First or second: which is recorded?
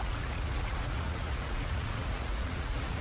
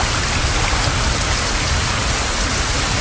second